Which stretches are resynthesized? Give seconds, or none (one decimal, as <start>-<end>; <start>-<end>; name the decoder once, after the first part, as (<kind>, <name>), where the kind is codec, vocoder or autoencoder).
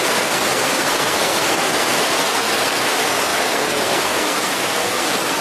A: 0.0-5.4 (codec, SNAC)